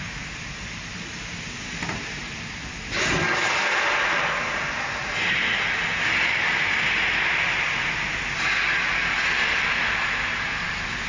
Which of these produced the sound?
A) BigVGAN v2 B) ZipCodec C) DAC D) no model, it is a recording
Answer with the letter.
D